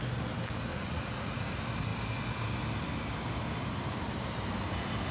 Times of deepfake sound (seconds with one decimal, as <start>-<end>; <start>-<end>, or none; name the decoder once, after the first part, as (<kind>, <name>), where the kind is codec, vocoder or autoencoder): 0.7-1.5 (vocoder, Vocos)